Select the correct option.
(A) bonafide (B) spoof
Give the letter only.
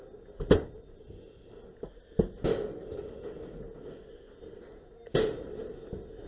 A